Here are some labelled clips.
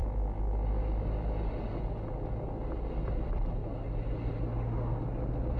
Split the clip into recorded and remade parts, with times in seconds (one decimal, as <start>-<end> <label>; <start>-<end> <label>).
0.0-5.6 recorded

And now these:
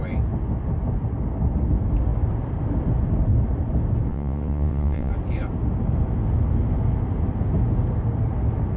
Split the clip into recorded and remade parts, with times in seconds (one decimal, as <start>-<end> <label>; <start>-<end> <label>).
0.0-4.1 recorded; 4.1-5.1 remade; 5.1-8.8 recorded

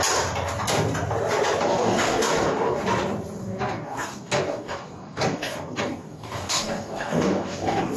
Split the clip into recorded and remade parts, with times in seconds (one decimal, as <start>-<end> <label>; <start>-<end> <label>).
0.0-1.7 recorded; 1.7-2.8 remade; 2.8-3.4 recorded; 3.4-8.0 remade

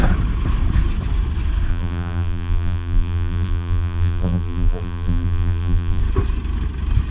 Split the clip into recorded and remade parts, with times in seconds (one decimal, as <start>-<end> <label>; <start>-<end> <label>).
0.0-1.7 recorded; 1.7-6.0 remade; 6.0-7.1 recorded

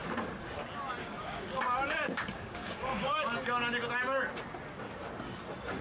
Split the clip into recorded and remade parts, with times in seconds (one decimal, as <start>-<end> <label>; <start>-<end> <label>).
0.0-1.0 recorded; 1.0-1.6 remade; 1.6-2.3 recorded; 2.3-3.3 remade; 3.3-5.8 recorded

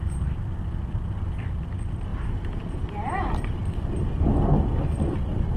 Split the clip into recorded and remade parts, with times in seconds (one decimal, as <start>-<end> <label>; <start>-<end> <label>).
0.0-5.6 recorded